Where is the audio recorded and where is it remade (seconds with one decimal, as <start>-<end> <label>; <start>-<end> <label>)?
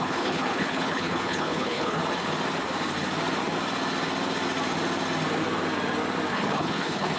0.0-2.0 remade; 2.0-6.3 recorded; 6.3-7.2 remade